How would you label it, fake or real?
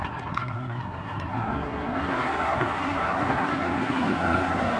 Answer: fake